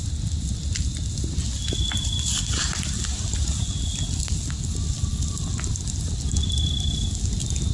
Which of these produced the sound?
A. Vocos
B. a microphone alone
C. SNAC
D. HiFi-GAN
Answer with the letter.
B